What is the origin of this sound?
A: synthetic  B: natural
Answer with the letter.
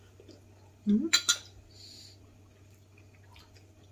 B